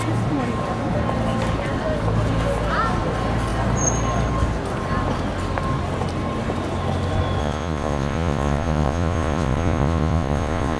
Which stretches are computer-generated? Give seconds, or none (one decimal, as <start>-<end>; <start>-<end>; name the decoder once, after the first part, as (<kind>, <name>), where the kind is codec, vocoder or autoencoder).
7.4-10.8 (vocoder, Vocos)

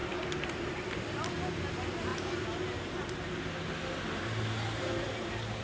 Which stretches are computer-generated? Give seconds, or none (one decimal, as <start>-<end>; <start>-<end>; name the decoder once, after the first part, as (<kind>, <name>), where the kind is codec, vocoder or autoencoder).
none

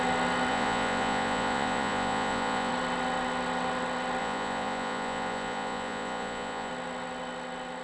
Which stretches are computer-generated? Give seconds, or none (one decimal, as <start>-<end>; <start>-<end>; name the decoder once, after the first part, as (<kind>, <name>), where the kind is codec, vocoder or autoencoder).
0.5-2.7 (vocoder, Vocos); 4.2-6.7

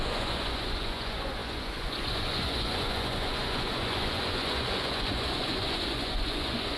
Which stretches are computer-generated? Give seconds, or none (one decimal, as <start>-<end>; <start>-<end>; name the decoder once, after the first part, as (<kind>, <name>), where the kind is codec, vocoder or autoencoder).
0.0-6.8 (vocoder, Vocos)